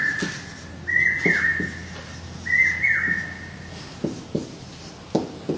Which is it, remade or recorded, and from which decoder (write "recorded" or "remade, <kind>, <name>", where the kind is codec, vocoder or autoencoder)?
recorded